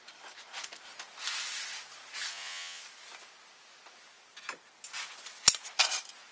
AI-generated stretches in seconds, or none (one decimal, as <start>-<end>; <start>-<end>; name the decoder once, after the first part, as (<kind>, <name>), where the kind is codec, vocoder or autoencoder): 2.3-2.8 (vocoder, Vocos)